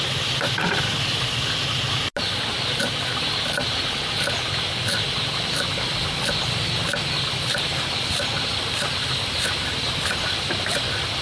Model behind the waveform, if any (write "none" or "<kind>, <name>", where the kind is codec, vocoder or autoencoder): none